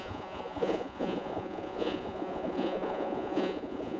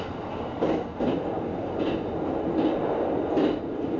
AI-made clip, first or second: first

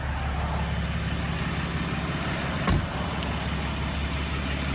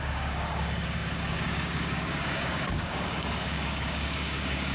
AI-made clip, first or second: second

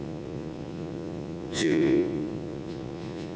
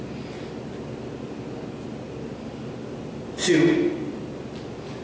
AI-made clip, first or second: first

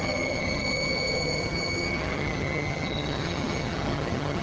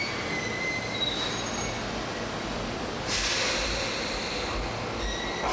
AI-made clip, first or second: first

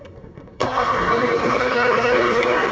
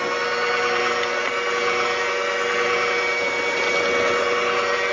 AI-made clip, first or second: first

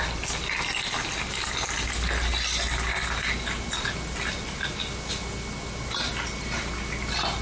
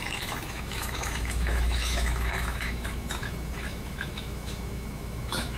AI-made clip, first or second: second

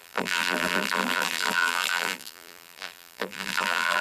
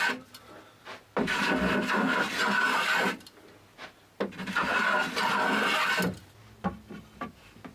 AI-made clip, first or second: first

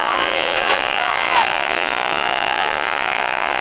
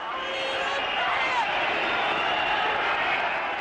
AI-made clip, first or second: first